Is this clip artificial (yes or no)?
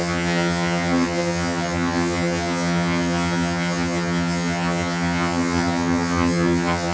yes